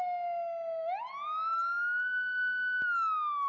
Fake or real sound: real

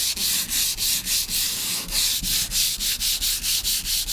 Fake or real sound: real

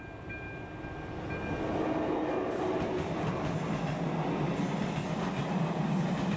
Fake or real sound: real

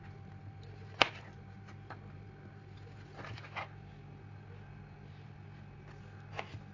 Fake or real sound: real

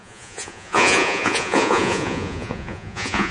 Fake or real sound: fake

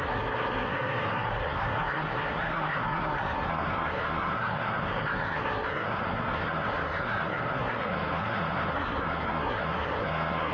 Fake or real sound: fake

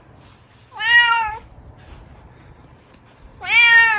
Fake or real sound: real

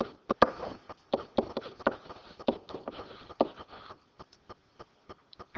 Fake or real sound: real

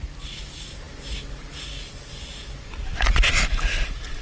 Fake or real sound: real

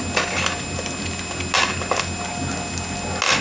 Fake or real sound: real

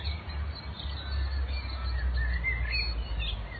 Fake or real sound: real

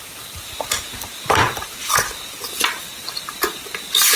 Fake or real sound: real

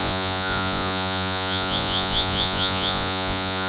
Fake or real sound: fake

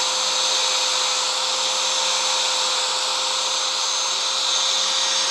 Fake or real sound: real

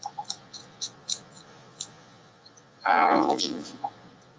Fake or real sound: fake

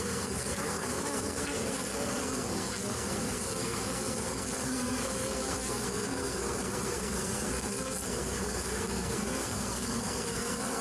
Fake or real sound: fake